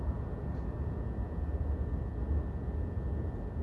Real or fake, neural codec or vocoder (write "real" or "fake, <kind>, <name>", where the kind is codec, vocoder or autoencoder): real